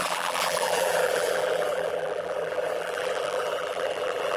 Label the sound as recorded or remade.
remade